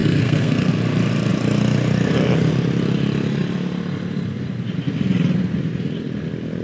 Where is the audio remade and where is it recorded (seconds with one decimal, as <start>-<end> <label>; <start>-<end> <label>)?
0.0-0.7 remade; 0.7-6.6 recorded